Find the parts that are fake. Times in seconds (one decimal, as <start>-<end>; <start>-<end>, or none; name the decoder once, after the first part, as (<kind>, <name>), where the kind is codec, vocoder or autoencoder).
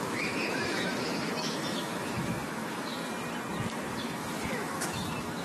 0.0-3.0 (autoencoder, DAC-VAE); 4.0-5.4